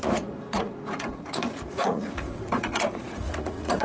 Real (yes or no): no